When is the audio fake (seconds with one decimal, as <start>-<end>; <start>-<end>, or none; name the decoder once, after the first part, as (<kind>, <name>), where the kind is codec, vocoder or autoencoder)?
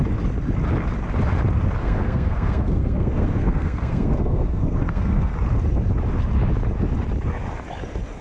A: 1.8-5.3 (codec, SNAC)